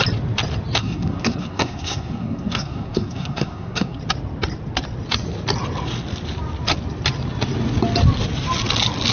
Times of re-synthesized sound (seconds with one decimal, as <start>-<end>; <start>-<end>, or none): 0.8-4.0